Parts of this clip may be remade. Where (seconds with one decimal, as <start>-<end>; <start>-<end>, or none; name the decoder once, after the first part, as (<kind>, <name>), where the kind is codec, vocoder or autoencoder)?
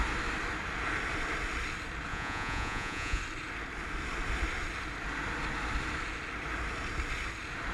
2.1-3.2 (vocoder, Vocos)